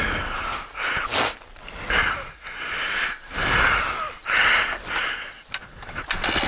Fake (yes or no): no